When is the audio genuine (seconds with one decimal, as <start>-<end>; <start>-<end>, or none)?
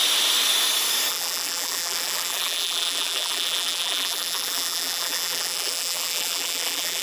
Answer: 0.0-1.1